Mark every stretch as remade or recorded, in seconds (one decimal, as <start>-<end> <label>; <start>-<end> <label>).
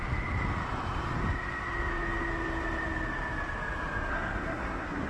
0.0-4.1 recorded; 4.1-5.1 remade